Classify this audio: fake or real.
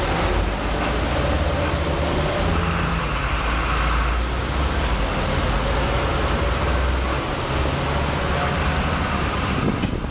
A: real